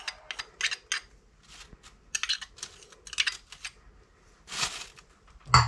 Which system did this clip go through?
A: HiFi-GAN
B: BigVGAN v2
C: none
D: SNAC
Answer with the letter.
C